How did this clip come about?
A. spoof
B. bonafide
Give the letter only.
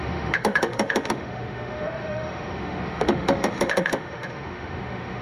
A